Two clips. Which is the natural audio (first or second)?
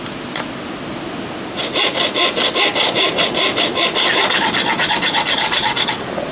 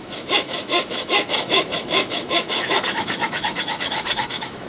first